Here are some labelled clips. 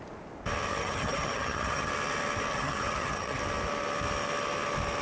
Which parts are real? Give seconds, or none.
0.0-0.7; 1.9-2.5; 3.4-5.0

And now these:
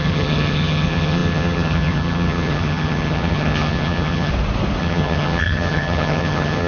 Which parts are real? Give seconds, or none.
4.3-4.8

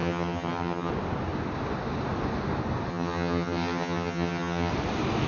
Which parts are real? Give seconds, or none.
0.9-2.9; 4.7-5.3

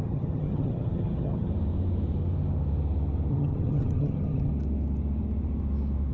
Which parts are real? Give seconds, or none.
1.5-3.3; 4.5-6.1

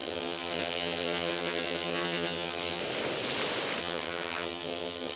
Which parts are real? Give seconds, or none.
2.8-3.8